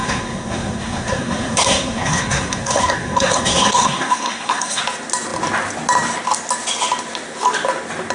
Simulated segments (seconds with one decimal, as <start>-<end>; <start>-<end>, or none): 0.0-4.8